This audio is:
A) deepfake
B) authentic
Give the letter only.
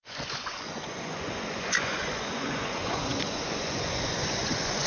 A